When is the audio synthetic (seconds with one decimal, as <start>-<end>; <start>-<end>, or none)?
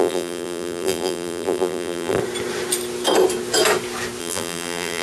0.0-2.2; 4.2-5.0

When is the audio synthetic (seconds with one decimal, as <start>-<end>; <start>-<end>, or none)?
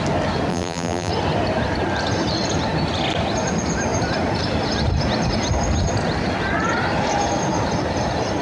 0.5-1.1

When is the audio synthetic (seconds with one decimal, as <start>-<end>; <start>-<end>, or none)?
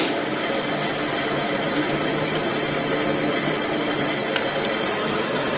0.0-2.5; 3.4-4.2; 4.8-5.6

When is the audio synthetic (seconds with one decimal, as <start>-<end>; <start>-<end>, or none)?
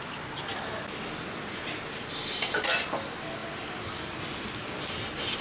0.5-1.1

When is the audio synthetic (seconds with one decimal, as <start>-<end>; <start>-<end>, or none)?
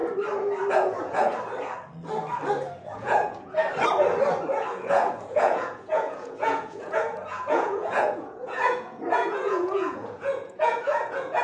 0.7-1.3; 2.8-3.6; 4.7-11.4